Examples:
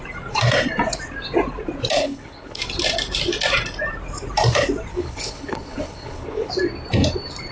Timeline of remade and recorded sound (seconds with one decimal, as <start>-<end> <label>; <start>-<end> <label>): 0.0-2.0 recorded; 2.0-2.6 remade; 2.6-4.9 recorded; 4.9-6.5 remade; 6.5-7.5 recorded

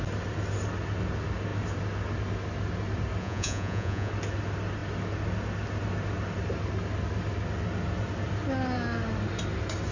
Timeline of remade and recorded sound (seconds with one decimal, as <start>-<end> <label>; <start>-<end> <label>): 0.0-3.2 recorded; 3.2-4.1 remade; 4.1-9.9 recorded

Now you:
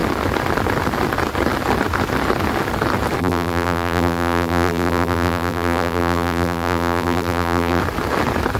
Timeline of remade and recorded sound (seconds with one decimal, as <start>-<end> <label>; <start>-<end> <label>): 0.0-3.2 recorded; 3.2-7.8 remade; 7.8-8.6 recorded

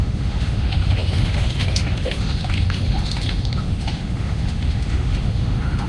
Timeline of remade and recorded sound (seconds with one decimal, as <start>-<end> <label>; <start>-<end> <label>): 0.0-5.9 remade